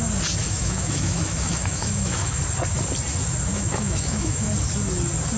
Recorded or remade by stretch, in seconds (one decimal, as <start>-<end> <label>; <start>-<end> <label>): 0.0-0.4 recorded; 0.4-2.4 remade; 2.4-3.5 recorded; 3.5-4.5 remade; 4.5-5.4 recorded